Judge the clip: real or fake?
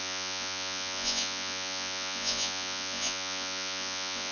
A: fake